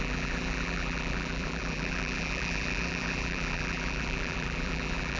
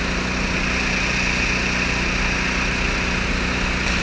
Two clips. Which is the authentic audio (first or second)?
second